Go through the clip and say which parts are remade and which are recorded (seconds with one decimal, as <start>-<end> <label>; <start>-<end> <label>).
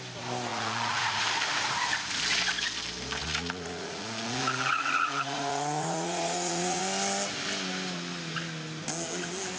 0.0-0.5 recorded; 0.5-1.2 remade; 1.2-3.2 recorded; 3.2-6.8 remade; 6.8-9.6 recorded